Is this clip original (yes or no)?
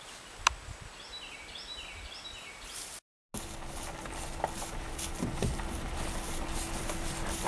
yes